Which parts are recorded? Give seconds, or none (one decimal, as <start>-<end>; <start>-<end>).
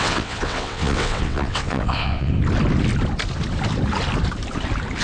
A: 2.3-5.0